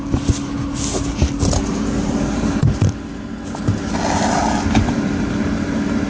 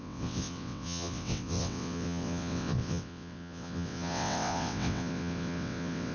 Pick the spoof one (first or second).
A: second